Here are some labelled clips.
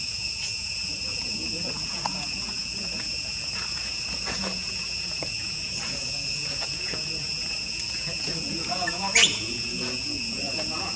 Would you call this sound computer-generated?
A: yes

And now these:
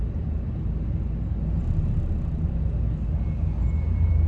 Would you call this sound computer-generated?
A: no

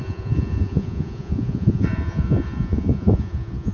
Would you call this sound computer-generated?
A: yes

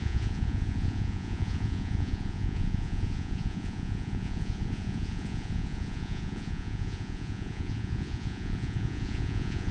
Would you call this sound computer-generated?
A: yes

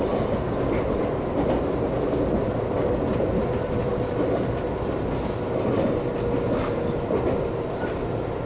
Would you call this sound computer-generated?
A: no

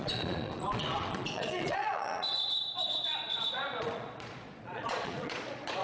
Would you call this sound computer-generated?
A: yes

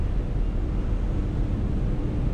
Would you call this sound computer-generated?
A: no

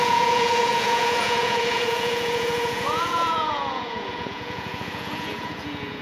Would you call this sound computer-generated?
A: yes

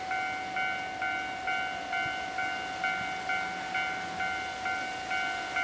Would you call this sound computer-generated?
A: no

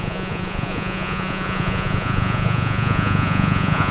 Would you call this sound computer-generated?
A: yes